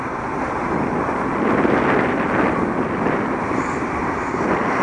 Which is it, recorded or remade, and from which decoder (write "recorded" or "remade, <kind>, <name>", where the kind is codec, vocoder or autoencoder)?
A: recorded